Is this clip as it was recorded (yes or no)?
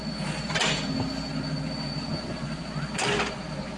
yes